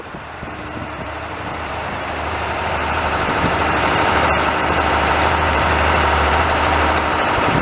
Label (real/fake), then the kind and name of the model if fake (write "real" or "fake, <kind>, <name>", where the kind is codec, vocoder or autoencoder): fake, vocoder, BigVGAN v2